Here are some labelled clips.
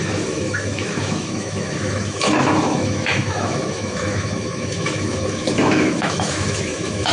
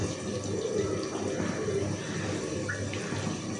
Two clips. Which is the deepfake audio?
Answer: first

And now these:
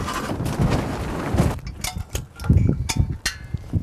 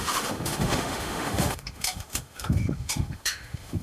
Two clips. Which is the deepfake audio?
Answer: second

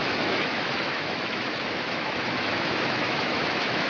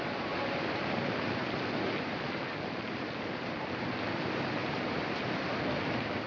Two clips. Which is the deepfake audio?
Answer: first